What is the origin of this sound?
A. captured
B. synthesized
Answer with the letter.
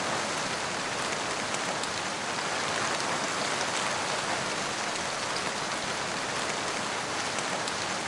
A